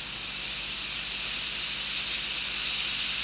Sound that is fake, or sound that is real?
real